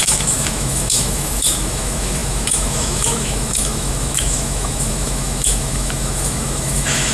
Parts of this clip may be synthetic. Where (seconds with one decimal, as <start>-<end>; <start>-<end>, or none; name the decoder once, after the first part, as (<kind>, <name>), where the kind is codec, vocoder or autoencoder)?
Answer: 0.0-7.1 (autoencoder, DAC-VAE)